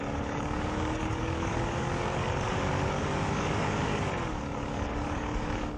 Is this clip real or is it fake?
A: fake